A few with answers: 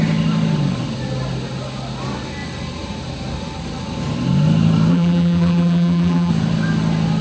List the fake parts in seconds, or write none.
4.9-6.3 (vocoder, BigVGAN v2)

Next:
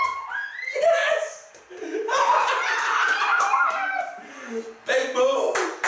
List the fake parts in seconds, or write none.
1.0-4.5 (vocoder, BigVGAN v2)

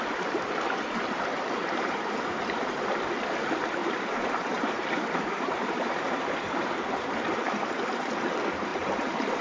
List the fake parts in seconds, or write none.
1.3-2.8 (vocoder, BigVGAN v2); 3.8-7.7; 8.7-9.4

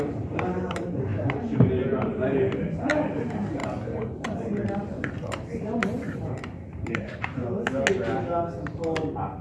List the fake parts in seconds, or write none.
0.0-7.4 (vocoder, BigVGAN v2)

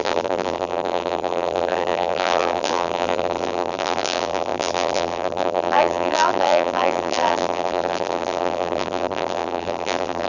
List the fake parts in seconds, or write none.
0.0-10.3 (vocoder, BigVGAN v2)

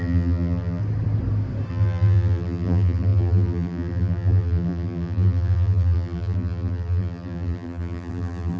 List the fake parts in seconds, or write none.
0.0-0.8 (vocoder, BigVGAN v2); 1.7-8.6